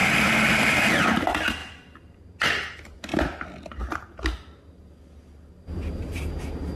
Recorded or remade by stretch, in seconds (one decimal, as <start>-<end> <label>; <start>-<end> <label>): 0.0-0.8 remade; 0.8-6.8 recorded